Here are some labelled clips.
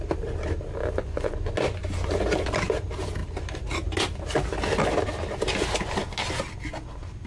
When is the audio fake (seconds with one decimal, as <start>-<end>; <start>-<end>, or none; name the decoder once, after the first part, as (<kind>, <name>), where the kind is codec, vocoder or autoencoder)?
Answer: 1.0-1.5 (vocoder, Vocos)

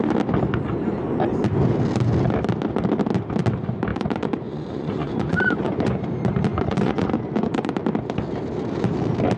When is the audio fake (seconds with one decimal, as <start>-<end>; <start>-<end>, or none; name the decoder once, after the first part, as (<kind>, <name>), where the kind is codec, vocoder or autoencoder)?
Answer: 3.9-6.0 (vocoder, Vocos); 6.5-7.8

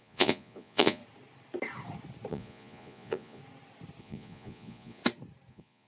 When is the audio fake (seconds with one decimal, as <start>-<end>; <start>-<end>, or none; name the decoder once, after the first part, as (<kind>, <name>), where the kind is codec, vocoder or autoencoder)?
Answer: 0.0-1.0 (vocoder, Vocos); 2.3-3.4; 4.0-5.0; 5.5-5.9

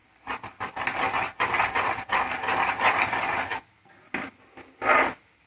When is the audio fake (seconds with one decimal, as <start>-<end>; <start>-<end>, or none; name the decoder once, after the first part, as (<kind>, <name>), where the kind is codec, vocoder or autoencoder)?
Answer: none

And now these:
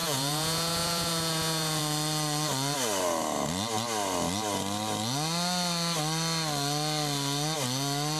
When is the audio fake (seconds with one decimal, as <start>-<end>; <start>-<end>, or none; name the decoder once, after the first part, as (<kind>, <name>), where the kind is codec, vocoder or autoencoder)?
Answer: 0.0-1.8 (vocoder, Vocos)

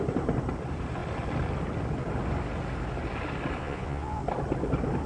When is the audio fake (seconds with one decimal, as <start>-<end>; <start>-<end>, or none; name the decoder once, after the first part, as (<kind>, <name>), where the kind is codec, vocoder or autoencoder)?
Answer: 3.6-4.2 (vocoder, Vocos)

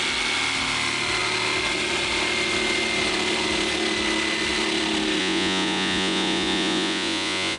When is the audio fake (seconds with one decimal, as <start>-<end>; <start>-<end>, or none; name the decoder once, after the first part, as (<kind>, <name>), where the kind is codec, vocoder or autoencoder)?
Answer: 5.2-7.6 (vocoder, Vocos)